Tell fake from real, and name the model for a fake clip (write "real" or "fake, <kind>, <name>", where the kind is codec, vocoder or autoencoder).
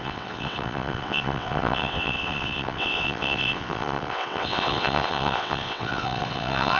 fake, vocoder, WaveNeXt